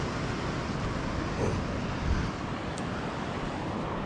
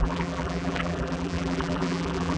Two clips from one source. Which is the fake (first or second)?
second